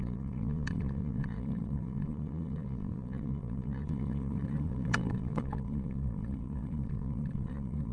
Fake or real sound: fake